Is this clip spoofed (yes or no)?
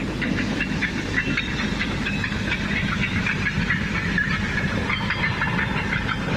no